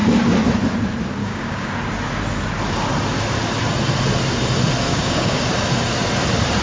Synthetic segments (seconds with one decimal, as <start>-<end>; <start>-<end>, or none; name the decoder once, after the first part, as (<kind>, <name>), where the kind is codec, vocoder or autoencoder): 1.2-1.7 (codec, DAC); 4.9-5.4